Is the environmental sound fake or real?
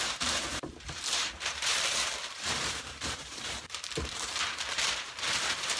fake